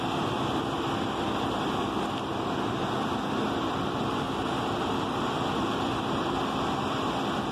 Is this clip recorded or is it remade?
recorded